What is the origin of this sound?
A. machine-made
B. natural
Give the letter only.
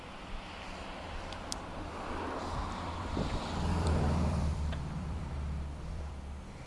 A